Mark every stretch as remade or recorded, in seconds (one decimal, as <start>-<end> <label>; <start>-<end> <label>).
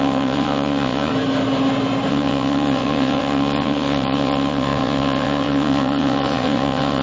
0.0-1.1 remade; 1.1-2.1 recorded; 2.1-7.0 remade